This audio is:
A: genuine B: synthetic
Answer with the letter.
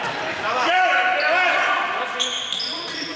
A